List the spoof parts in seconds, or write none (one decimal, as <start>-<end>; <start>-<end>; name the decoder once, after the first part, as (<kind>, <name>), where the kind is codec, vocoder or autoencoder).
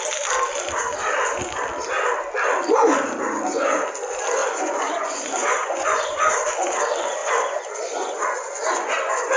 4.4-6.3 (vocoder, Vocos); 7.2-9.4